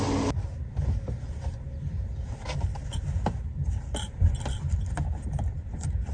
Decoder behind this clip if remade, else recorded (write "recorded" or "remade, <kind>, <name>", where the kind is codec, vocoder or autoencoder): recorded